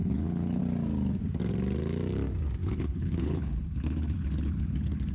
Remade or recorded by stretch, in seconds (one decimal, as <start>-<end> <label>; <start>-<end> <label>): 0.0-0.6 remade; 0.6-2.6 recorded; 2.6-5.1 remade